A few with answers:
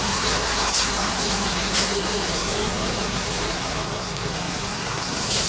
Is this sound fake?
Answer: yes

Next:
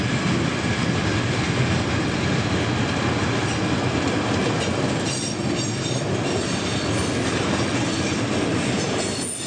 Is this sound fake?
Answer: no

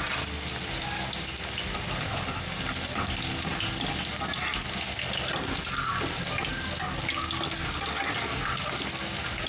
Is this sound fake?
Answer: no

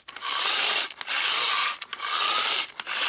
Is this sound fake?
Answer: yes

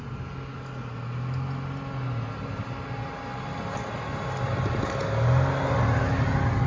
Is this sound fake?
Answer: no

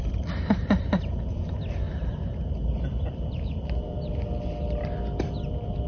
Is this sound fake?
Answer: no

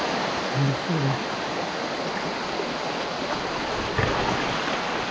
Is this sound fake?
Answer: no